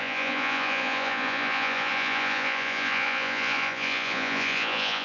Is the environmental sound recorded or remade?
remade